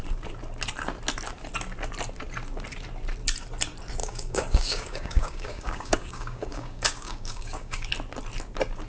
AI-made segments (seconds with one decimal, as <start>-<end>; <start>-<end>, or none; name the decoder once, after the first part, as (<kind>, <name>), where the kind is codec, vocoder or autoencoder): 4.0-7.9 (codec, DAC)